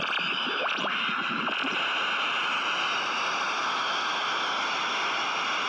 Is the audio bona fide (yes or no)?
yes